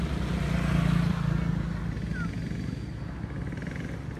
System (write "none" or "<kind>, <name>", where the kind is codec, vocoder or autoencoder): none